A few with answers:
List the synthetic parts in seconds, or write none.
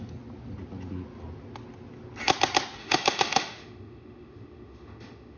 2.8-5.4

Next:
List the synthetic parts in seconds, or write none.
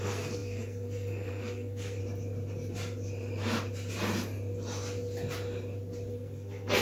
0.0-2.0; 6.1-6.8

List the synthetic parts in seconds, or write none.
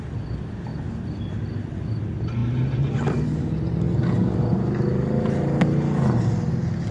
none